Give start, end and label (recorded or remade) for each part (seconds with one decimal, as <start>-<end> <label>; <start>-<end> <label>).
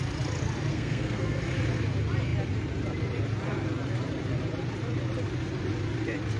0.0-0.7 recorded; 0.7-1.4 remade; 1.4-6.4 recorded